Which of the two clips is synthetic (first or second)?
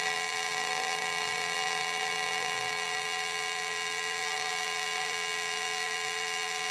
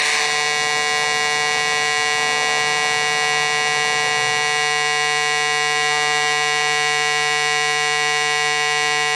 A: first